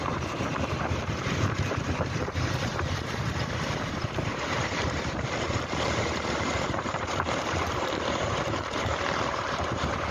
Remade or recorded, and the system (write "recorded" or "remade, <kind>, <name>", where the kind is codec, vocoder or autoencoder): remade, vocoder, BigVGAN v2